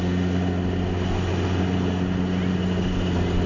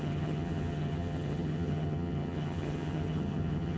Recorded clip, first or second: first